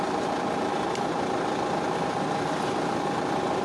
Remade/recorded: recorded